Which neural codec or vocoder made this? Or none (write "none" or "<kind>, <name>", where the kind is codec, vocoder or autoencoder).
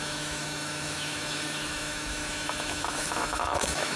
autoencoder, DAC-VAE